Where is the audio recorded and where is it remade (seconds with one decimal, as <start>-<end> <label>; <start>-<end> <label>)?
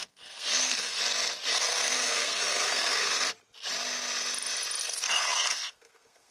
0.0-1.0 remade; 1.0-1.5 recorded; 1.5-3.3 remade; 3.3-4.8 recorded; 4.8-6.3 remade